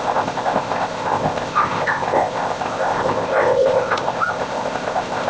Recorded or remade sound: remade